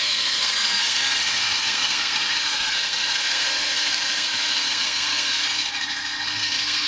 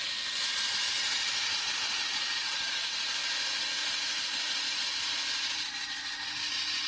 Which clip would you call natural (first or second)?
second